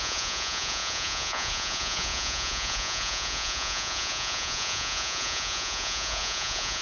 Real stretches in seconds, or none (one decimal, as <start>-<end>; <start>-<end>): none